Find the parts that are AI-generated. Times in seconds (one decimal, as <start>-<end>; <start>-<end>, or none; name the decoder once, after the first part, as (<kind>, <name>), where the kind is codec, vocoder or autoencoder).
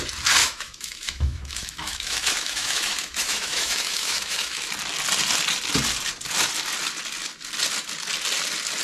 0.4-4.7 (autoencoder, DAC-VAE)